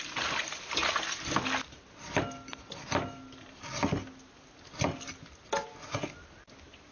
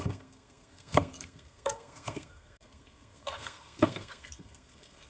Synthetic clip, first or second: second